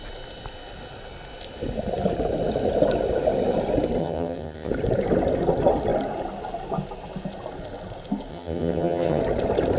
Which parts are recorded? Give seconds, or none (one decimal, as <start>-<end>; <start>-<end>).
0.0-4.0; 4.7-8.3; 9.2-9.8